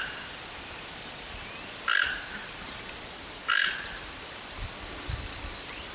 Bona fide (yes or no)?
yes